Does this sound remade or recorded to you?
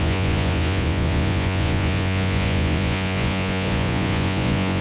remade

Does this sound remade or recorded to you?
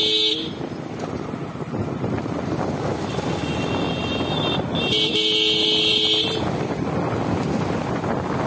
recorded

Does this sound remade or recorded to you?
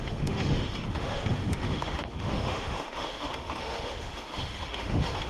remade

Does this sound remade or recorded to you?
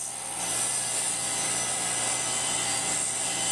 recorded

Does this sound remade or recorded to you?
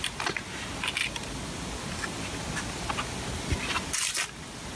recorded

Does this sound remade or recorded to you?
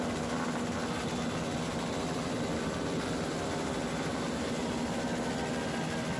recorded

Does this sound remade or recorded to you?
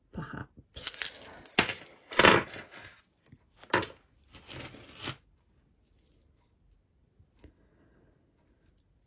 recorded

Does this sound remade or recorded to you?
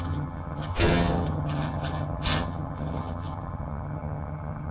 remade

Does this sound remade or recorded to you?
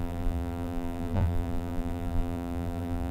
remade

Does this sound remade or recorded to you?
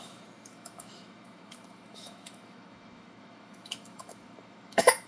remade